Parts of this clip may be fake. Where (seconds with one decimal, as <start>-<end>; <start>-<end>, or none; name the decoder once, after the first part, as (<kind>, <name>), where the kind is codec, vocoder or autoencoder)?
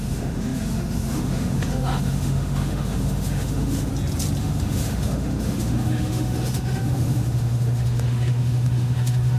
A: 0.0-3.9 (autoencoder, DAC-VAE); 4.4-9.4